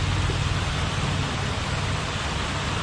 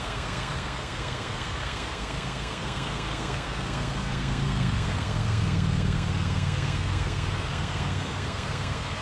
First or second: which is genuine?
first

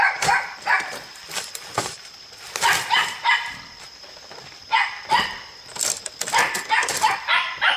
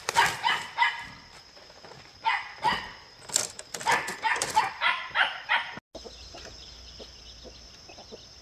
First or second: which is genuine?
second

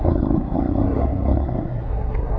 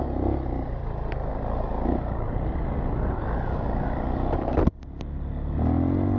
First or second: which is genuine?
second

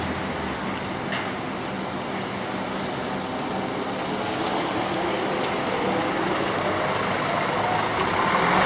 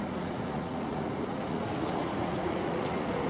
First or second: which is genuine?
first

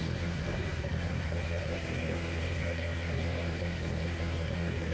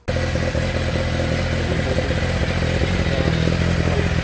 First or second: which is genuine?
second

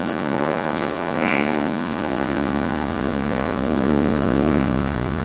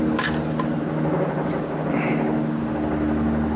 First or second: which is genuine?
second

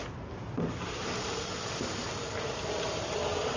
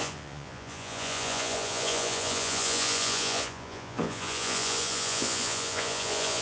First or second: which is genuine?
first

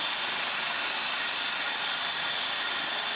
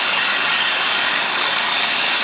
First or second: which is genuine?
first